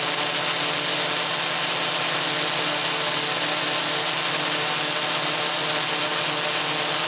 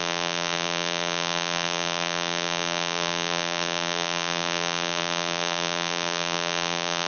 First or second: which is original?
first